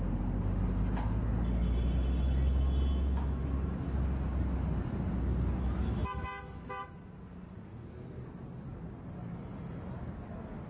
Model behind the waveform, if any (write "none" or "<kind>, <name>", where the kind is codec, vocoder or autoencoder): none